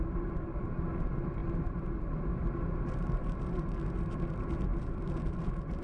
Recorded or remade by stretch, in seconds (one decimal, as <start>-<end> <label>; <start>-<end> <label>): 0.0-4.7 recorded; 4.7-5.8 remade